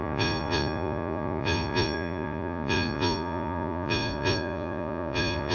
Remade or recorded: remade